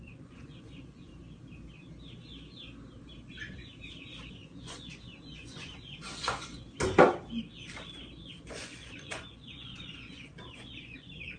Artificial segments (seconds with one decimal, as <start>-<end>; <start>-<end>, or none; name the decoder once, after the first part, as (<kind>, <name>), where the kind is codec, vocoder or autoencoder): 0.0-1.1 (vocoder, Vocos); 4.3-6.5; 8.3-11.4